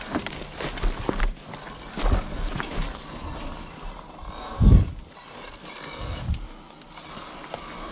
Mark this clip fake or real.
real